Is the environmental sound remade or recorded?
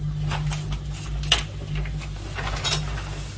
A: recorded